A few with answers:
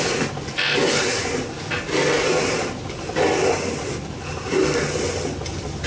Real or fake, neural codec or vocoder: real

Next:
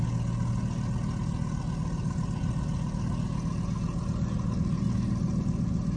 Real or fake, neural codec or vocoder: real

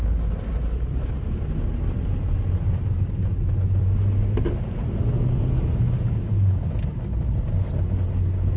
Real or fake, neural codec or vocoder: real